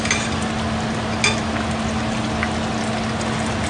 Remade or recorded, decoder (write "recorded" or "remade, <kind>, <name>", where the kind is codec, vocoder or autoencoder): recorded